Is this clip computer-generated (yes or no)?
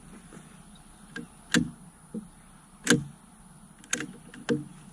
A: no